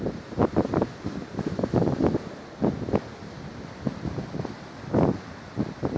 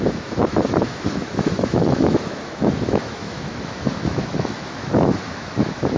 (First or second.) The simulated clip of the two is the second